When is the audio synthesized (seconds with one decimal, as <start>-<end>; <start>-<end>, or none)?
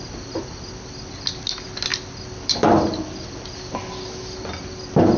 none